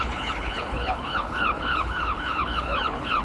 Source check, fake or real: fake